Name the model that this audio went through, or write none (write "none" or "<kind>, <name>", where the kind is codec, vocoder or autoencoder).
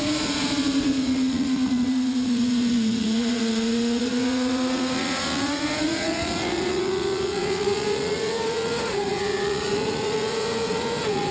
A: vocoder, Vocos